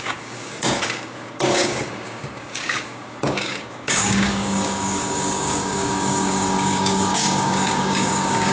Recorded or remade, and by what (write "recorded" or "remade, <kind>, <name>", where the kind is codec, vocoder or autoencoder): remade, codec, DAC